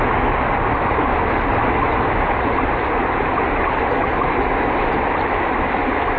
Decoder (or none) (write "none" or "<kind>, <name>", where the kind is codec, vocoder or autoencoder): none